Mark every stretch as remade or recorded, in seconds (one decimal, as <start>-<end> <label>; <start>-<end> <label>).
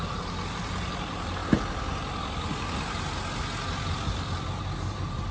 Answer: 0.0-1.4 remade; 1.4-4.6 recorded; 4.6-5.3 remade